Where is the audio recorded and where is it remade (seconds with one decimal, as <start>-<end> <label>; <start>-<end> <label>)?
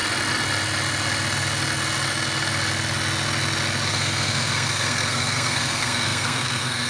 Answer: 0.0-3.9 recorded; 3.9-6.9 remade